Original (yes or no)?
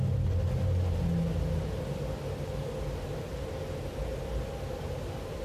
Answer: yes